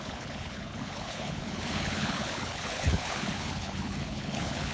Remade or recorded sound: remade